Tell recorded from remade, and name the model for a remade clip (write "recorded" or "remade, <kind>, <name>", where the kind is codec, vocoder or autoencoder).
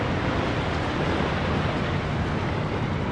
recorded